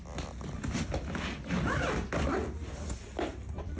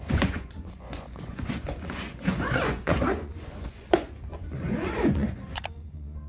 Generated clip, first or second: second